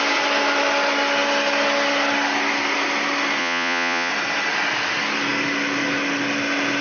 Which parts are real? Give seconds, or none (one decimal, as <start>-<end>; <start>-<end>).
0.0-3.4; 4.1-6.8